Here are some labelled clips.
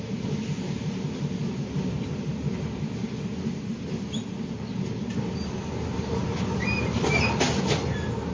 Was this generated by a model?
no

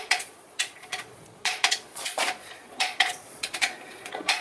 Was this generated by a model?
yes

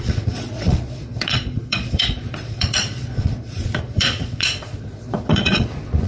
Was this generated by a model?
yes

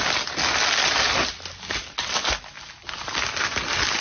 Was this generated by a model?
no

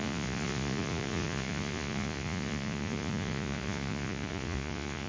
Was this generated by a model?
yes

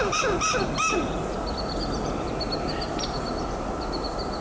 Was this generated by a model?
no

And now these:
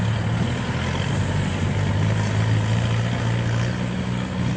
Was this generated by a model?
no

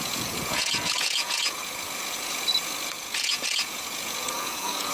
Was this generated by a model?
yes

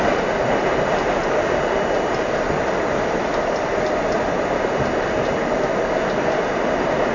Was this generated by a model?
no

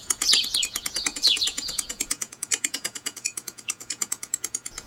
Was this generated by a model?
yes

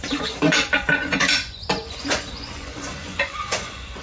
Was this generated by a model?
yes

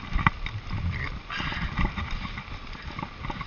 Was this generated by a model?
no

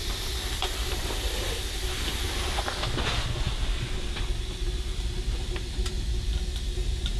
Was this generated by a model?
no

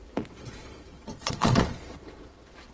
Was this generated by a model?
yes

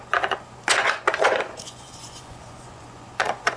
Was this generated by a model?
yes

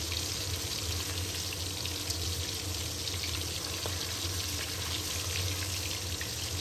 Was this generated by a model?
no